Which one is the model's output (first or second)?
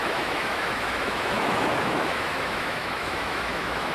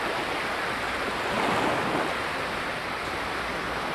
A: first